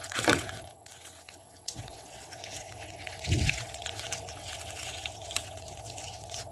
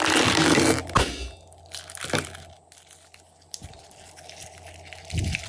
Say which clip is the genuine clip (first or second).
second